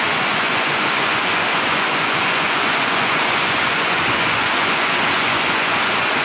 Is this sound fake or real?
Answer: fake